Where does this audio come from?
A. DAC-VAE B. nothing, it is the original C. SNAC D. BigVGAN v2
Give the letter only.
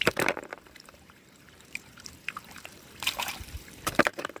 D